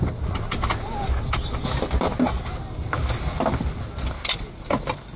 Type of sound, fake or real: real